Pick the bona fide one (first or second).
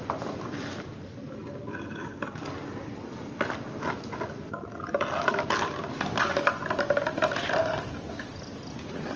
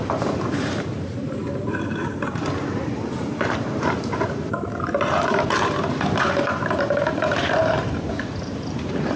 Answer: first